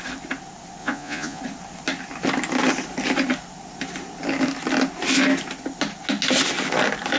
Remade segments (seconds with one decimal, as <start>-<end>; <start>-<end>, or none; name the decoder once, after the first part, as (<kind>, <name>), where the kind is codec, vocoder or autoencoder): 0.8-1.4 (vocoder, Vocos)